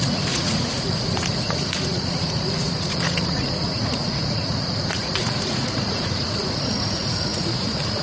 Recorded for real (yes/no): no